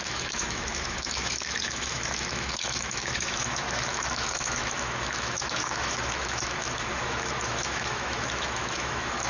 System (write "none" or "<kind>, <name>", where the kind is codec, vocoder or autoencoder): autoencoder, DAC-VAE